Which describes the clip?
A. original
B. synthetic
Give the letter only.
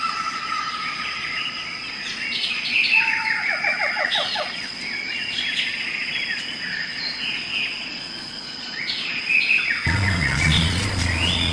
B